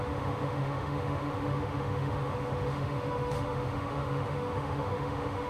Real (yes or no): no